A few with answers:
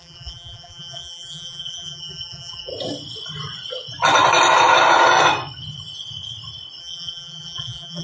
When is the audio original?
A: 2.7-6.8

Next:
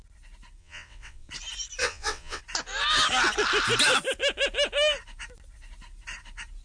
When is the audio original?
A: 0.0-0.6; 1.3-1.8; 2.4-6.6

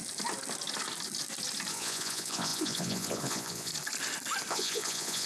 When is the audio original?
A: 0.0-1.7; 3.7-4.5

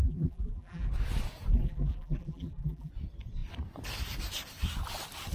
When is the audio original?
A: 0.9-1.5; 2.9-5.3

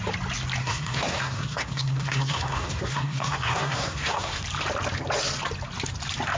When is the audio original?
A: 0.0-0.6; 4.4-6.4